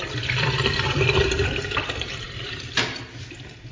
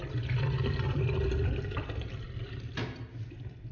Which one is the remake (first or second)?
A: first